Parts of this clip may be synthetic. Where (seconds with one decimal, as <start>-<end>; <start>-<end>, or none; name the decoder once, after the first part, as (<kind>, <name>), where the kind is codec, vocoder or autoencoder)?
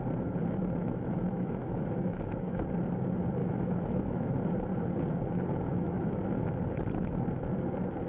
0.8-2.6 (autoencoder, DAC-VAE); 3.4-4.3; 5.7-6.2